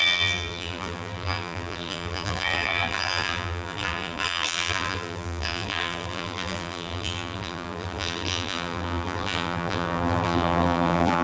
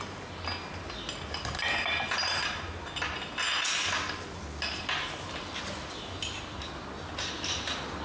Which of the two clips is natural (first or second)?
second